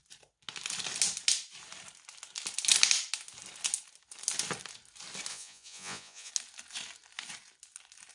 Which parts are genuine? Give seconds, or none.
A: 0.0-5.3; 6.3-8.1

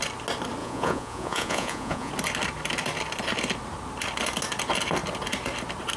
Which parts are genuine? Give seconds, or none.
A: 0.0-0.6; 2.1-6.0